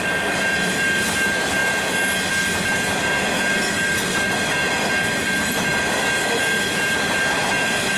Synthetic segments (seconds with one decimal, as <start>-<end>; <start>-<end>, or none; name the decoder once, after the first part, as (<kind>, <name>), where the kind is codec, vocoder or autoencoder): 0.0-1.6 (vocoder, BigVGAN v2); 2.3-8.0